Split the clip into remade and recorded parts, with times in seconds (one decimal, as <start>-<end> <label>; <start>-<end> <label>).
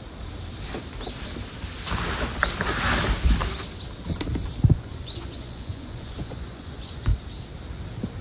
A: 0.0-4.7 recorded; 4.7-7.1 remade; 7.1-8.2 recorded